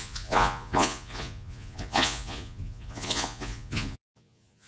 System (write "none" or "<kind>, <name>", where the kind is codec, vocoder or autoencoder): vocoder, Vocos